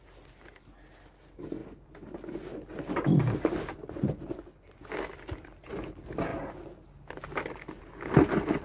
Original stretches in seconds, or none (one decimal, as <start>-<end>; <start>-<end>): 0.0-8.6